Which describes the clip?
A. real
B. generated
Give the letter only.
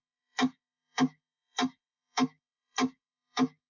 B